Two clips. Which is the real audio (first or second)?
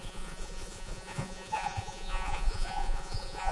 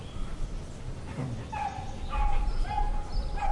second